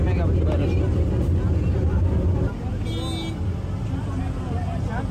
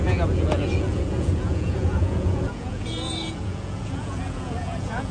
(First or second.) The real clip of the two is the first